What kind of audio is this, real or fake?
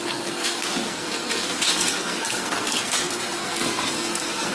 fake